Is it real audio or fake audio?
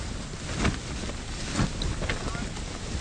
real